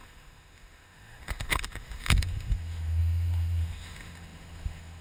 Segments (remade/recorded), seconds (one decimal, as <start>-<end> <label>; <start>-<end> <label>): 0.0-5.0 remade